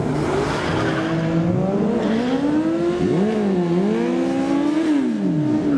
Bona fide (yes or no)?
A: yes